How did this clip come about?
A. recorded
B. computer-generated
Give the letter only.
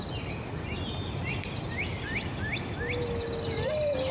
A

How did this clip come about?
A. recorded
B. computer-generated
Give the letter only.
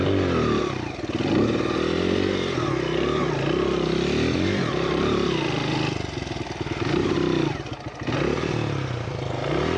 A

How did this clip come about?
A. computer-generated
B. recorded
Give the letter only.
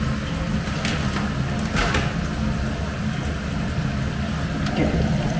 B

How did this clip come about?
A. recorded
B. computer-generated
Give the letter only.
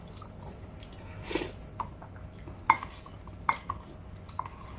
A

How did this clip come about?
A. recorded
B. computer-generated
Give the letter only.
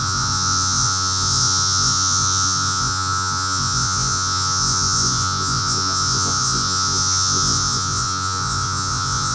B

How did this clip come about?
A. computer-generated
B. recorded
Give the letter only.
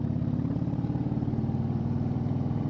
A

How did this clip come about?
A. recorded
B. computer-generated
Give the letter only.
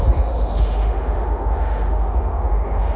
B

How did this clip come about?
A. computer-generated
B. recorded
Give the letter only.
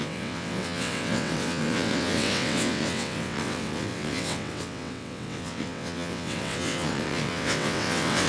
A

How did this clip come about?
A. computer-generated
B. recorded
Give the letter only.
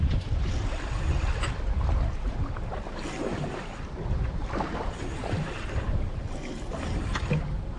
B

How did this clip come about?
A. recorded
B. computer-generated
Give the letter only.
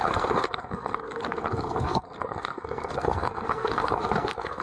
B